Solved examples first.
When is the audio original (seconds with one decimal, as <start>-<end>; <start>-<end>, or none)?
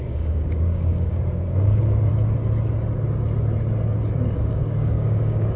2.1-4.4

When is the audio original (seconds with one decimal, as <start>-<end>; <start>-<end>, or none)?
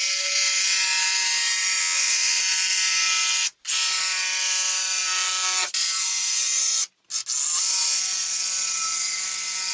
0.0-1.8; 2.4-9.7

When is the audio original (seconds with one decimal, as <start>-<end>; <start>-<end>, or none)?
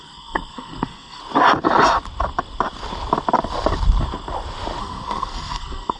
1.2-4.8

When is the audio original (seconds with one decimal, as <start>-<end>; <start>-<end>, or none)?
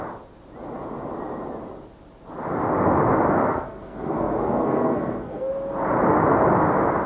0.0-3.4; 5.5-7.1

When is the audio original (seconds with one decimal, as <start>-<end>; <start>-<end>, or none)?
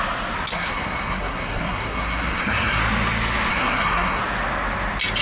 0.0-0.5; 2.8-3.5; 4.2-5.2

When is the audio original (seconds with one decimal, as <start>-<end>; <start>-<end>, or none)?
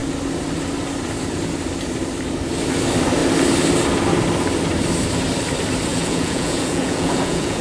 0.0-5.9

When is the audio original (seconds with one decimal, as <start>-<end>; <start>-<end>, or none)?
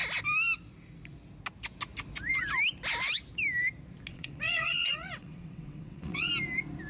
0.0-4.1; 6.3-6.9